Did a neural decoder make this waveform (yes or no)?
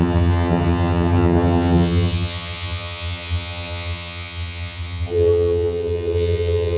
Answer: yes